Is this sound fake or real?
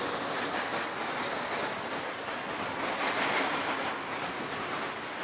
real